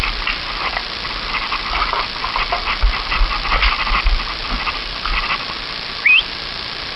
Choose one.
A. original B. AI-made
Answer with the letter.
A